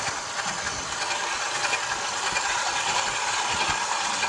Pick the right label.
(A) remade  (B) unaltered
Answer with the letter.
B